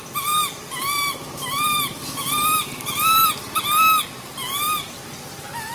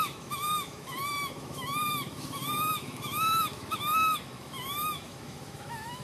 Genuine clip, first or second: first